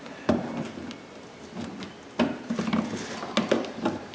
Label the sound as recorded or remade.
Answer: recorded